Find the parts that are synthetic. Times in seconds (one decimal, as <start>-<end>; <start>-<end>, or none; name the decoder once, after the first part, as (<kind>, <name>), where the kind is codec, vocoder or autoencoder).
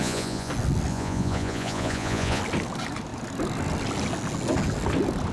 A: 0.0-0.5 (vocoder, Vocos); 0.9-2.4